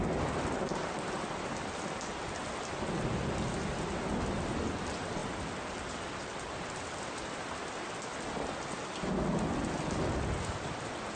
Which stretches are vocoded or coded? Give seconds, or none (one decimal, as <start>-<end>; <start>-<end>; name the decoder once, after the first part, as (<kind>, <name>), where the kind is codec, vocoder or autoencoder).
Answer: 5.2-6.5 (vocoder, BigVGAN v2)